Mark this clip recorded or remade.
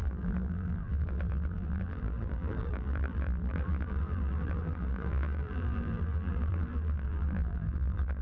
remade